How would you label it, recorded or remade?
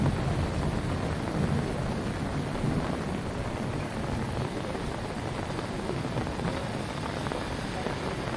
recorded